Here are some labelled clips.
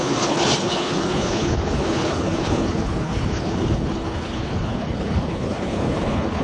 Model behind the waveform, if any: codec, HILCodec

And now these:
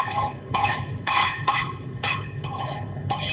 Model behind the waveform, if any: codec, HILCodec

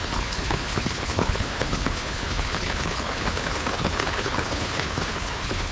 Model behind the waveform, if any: codec, HILCodec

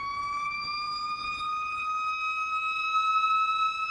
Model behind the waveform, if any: none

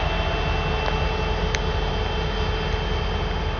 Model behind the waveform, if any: none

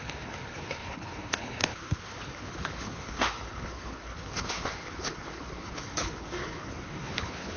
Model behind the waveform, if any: codec, HILCodec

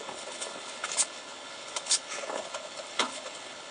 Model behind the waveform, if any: codec, HILCodec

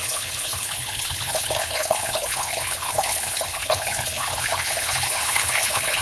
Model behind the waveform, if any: codec, HILCodec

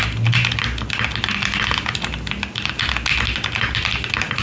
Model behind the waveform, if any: none